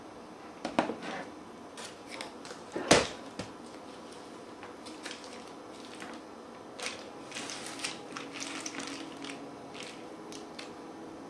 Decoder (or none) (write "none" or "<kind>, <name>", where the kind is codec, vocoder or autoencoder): none